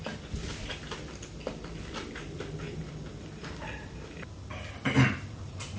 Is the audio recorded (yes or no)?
yes